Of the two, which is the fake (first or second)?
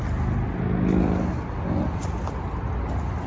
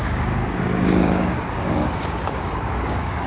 second